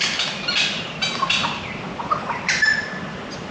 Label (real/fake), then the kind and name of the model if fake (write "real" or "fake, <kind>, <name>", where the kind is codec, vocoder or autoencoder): real